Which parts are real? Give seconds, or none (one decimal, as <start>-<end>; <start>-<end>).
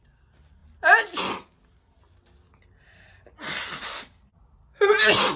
0.0-5.4